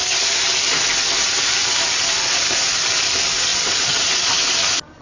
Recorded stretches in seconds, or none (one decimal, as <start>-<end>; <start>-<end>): 0.0-3.5; 4.3-5.0